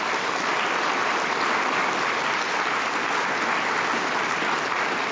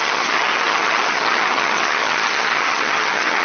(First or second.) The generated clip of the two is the second